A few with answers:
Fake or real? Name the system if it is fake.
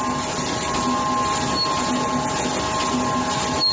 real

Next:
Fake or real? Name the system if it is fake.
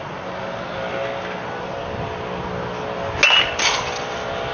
real